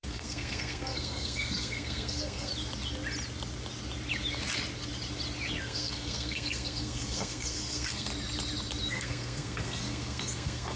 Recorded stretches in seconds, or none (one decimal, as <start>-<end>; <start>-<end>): 2.5-5.6; 8.1-8.9